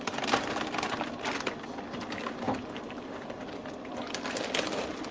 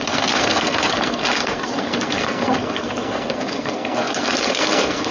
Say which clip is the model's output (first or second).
second